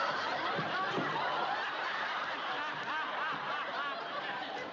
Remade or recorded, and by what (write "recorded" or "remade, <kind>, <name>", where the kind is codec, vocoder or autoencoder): recorded